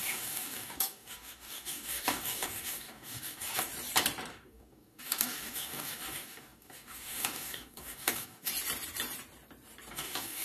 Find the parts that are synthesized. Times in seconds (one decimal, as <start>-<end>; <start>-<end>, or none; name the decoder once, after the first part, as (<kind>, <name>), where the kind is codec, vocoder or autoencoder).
0.0-3.7 (codec, DAC); 4.3-8.5; 9.9-10.4